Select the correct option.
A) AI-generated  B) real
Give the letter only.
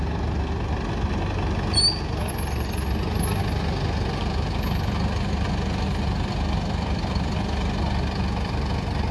B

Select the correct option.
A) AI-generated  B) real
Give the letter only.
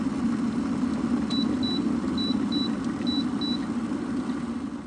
B